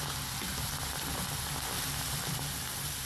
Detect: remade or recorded recorded